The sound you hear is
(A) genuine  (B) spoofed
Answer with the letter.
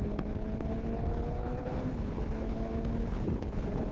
B